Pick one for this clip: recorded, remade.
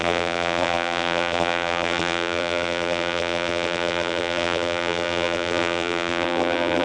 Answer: remade